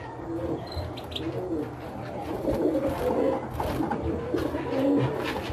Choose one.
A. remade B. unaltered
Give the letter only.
B